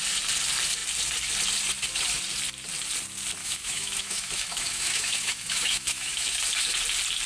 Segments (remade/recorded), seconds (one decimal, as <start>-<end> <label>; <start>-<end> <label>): 0.0-3.4 recorded; 3.4-6.4 remade; 6.4-7.3 recorded